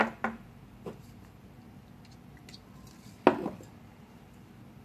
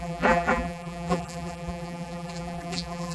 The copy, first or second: second